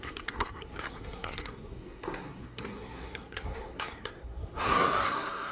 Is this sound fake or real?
fake